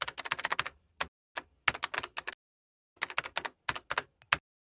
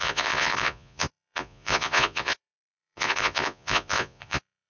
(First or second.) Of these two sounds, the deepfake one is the second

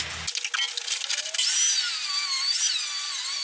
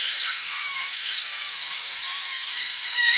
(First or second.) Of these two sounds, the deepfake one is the second